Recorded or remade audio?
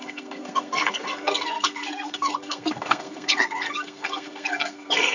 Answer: remade